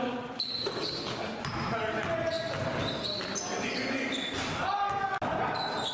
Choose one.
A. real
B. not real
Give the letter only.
A